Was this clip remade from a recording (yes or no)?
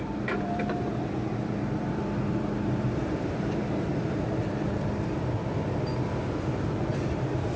yes